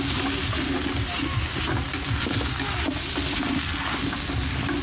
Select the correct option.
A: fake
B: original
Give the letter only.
B